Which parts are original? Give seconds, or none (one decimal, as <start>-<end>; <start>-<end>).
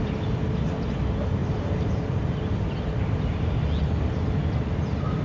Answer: 0.0-1.4; 2.2-5.2